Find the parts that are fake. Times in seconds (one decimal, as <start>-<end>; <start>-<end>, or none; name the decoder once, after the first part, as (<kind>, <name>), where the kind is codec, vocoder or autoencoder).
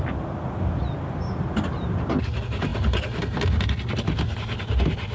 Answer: none